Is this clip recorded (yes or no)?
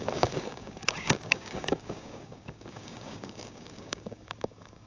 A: no